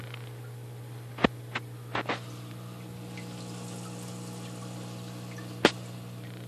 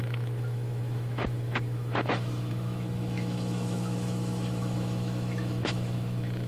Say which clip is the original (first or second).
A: first